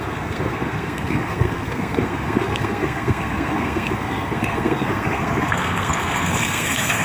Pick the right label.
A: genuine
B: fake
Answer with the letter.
B